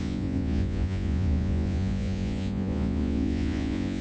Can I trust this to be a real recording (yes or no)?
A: no